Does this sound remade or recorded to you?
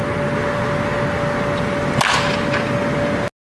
recorded